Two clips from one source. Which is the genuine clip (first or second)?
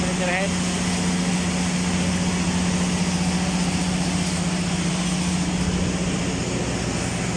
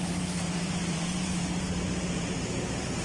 first